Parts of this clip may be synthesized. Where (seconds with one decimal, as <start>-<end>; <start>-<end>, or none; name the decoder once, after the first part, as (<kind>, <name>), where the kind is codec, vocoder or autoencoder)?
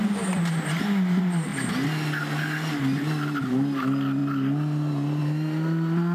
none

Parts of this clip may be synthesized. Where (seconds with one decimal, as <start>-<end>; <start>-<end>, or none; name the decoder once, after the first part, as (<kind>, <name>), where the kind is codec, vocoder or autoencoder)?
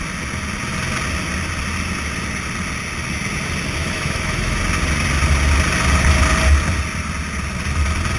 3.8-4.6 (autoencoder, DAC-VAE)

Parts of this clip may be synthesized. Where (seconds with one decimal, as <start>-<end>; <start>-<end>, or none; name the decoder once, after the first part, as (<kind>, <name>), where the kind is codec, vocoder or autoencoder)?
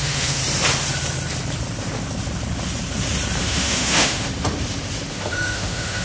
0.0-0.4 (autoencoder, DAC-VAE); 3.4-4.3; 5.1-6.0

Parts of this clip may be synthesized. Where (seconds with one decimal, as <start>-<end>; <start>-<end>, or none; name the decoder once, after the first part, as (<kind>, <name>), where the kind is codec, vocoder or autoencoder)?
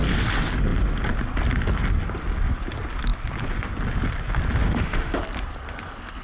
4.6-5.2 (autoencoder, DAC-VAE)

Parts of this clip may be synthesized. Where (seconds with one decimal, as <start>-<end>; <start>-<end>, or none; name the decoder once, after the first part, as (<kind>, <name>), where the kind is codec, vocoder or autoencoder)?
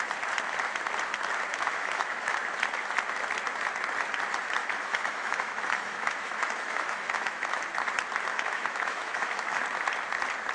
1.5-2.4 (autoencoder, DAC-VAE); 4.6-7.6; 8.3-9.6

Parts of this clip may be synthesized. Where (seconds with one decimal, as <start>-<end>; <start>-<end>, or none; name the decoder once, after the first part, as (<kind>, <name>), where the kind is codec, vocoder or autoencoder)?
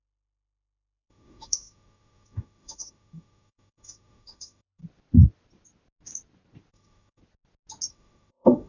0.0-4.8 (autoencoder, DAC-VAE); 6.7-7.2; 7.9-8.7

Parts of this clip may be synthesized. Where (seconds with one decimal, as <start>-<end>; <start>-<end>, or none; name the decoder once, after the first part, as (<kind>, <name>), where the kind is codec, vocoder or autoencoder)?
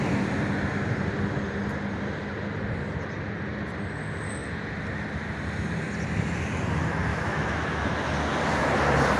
7.1-7.9 (autoencoder, DAC-VAE)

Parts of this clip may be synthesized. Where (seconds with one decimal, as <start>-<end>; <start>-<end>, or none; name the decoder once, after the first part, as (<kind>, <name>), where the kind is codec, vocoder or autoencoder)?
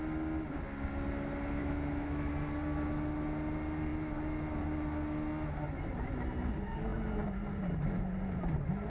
1.6-2.3 (autoencoder, DAC-VAE)